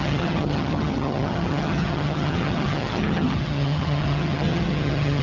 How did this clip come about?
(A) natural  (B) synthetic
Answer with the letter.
B